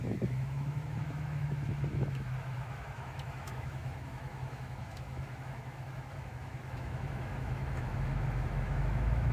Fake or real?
fake